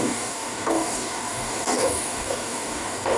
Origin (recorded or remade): remade